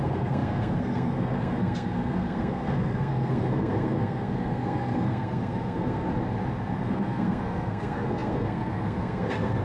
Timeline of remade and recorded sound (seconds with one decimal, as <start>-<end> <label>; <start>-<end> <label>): 0.0-6.1 remade; 6.1-6.8 recorded; 6.8-9.6 remade